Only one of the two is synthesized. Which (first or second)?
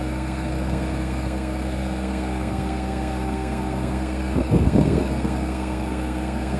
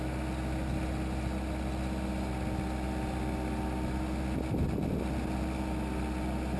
first